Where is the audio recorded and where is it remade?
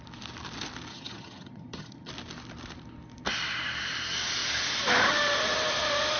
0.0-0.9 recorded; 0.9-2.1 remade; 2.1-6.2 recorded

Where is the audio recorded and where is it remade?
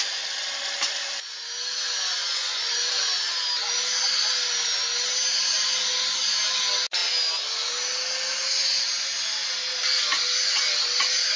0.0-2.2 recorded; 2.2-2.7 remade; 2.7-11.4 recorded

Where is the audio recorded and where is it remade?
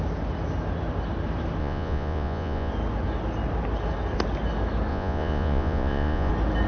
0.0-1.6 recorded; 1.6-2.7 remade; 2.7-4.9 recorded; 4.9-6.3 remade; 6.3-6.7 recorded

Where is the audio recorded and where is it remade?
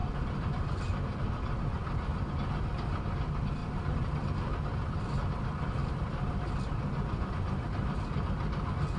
0.0-0.8 remade; 0.8-1.8 recorded; 1.8-2.5 remade; 2.5-3.6 recorded; 3.6-4.2 remade; 4.2-5.8 recorded; 5.8-6.4 remade; 6.4-9.0 recorded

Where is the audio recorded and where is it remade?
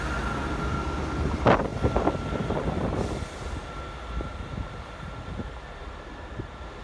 0.0-6.8 recorded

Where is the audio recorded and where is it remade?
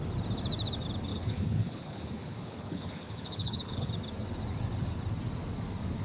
0.0-1.1 recorded; 1.1-3.9 remade; 3.9-6.0 recorded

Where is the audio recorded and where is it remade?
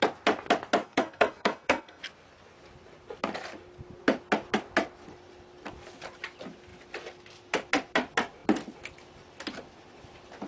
0.0-0.8 recorded; 0.8-2.0 remade; 2.0-10.5 recorded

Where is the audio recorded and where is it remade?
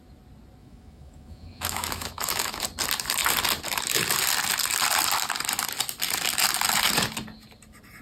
0.0-0.6 recorded; 0.6-2.6 remade; 2.6-8.0 recorded